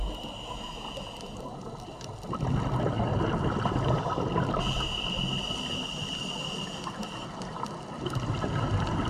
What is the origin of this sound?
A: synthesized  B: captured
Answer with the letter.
B